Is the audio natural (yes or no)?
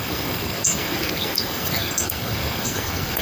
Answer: no